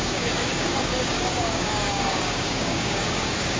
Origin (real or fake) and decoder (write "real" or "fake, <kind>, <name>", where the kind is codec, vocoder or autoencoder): fake, codec, DAC